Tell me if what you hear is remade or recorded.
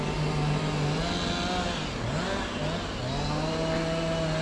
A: recorded